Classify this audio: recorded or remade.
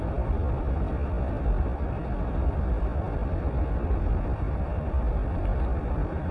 recorded